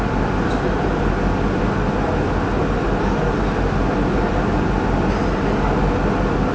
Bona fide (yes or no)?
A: yes